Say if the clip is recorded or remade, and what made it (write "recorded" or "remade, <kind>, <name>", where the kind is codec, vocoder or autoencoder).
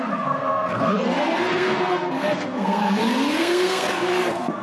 remade, codec, SNAC